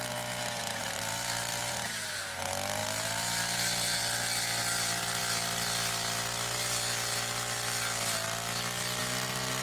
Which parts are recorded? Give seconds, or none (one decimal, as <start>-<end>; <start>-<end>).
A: 0.0-0.8; 2.2-2.8; 3.3-9.6